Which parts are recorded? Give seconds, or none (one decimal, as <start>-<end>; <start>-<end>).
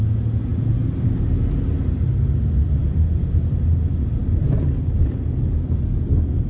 0.0-6.5